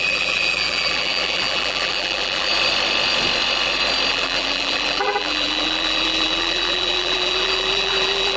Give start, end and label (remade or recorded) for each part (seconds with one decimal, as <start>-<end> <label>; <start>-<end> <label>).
0.0-2.5 remade; 2.5-4.1 recorded; 4.1-8.4 remade